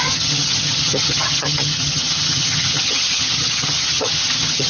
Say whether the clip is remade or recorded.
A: remade